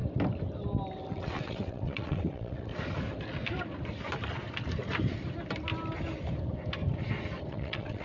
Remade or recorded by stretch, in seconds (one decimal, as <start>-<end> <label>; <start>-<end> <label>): 0.0-1.1 recorded; 1.1-2.7 remade; 2.7-7.5 recorded; 7.5-8.0 remade